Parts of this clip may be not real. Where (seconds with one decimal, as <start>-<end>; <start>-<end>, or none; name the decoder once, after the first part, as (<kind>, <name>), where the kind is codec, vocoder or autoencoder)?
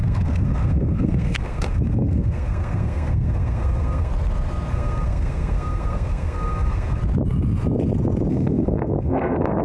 0.0-4.1 (codec, SNAC); 4.7-7.0; 8.3-9.6